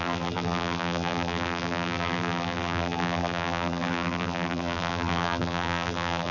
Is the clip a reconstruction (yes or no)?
yes